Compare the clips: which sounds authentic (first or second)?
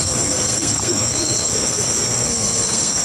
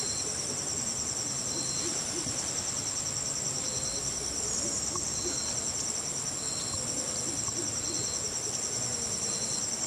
second